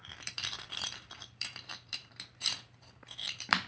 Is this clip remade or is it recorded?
remade